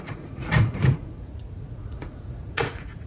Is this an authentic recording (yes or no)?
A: no